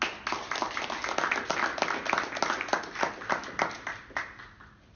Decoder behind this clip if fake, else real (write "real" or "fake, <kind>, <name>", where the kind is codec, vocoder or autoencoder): real